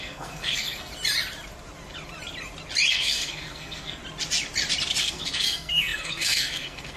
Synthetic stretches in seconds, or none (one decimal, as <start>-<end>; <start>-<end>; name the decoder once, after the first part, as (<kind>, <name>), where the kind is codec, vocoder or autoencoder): 0.0-0.9 (codec, SNAC); 2.9-4.0; 5.0-7.0